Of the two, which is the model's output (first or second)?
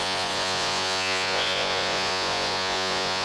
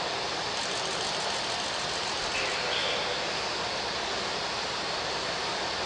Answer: first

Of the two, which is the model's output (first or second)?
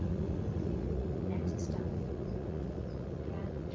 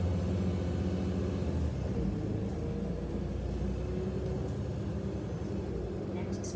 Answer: first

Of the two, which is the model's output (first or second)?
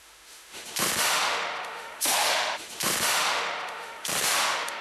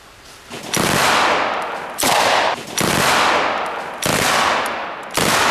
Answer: first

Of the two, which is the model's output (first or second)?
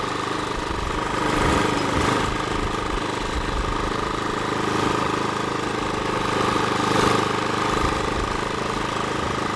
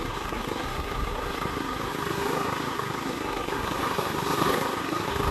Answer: second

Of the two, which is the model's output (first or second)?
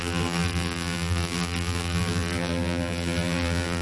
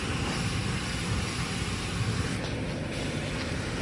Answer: first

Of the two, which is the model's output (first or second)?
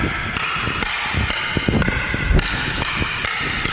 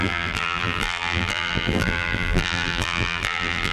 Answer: second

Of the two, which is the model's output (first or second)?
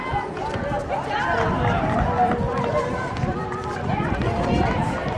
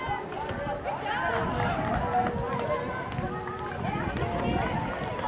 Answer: first